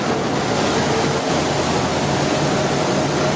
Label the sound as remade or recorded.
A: recorded